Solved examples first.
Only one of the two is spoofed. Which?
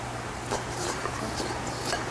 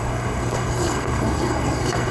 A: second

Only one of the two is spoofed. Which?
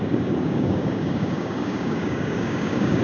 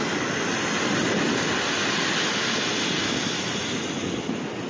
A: first